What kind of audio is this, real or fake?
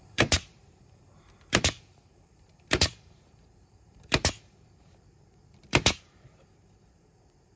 fake